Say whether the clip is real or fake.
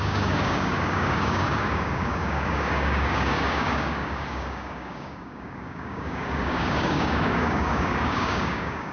fake